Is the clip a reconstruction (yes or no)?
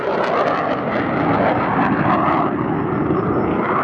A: no